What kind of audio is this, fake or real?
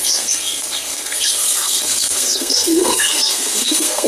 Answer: fake